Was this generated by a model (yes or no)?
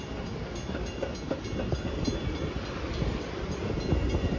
no